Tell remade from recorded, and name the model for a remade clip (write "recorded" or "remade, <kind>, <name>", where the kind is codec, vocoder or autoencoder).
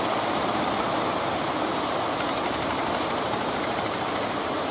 recorded